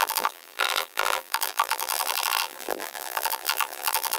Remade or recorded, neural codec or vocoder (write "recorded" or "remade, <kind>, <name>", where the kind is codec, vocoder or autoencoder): remade, vocoder, BigVGAN v2